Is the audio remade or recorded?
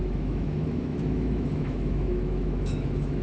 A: remade